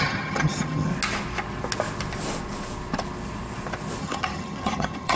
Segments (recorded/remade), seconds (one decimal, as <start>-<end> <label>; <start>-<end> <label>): 0.0-0.9 remade; 0.9-4.0 recorded; 4.0-5.2 remade